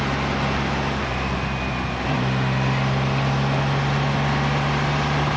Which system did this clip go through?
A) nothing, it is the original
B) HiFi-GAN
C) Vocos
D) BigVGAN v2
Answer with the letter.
A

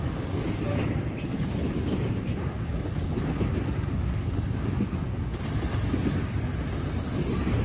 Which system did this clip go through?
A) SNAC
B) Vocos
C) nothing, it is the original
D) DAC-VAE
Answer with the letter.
C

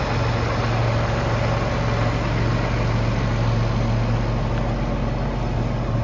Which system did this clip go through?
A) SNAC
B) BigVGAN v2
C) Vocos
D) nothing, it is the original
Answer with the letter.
D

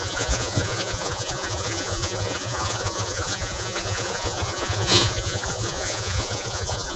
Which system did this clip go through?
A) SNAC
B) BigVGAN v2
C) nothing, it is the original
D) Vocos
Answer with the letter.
D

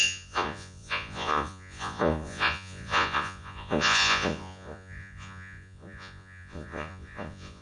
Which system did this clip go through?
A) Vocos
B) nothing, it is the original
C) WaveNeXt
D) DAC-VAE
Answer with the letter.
A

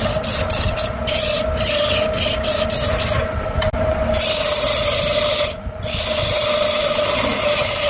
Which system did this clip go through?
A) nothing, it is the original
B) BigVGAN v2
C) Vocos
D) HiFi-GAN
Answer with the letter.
A